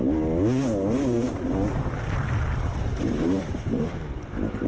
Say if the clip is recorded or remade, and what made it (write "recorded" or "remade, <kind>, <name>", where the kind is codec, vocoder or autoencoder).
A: recorded